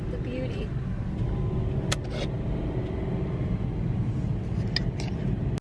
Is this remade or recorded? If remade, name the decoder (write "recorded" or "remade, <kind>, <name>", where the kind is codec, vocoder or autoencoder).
recorded